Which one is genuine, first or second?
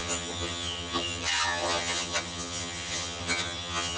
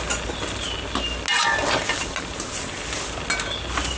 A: second